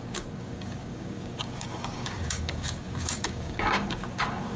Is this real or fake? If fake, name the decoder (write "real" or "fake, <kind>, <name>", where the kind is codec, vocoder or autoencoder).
fake, codec, DAC